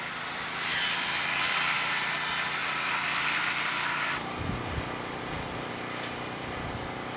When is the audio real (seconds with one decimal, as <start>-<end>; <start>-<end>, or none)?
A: none